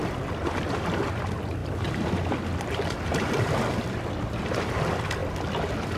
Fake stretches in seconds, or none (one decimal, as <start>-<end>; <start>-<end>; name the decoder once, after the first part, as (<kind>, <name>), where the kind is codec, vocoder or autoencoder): none